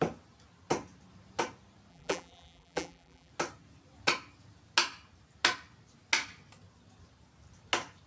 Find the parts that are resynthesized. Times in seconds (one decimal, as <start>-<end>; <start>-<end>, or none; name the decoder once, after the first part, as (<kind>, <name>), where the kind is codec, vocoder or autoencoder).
1.9-3.3 (vocoder, BigVGAN v2)

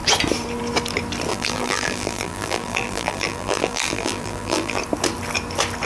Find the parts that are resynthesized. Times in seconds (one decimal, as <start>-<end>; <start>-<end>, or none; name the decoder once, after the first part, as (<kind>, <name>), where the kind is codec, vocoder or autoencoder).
1.3-4.8 (vocoder, BigVGAN v2)

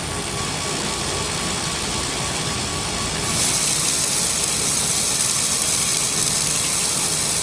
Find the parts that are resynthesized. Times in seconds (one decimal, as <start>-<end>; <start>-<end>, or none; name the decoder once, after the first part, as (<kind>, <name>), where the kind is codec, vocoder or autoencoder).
none